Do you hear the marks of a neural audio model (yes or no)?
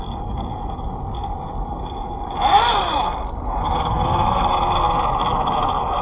no